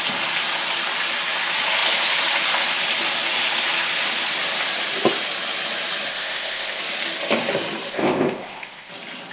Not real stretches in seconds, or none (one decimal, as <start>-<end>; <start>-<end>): 6.1-6.8; 7.9-8.9